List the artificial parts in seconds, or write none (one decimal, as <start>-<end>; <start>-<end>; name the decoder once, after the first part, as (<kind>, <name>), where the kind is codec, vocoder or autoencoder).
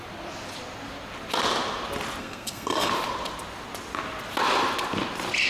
2.2-2.9 (codec, SNAC)